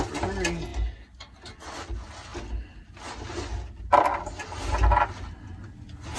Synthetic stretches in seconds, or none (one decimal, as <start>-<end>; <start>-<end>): none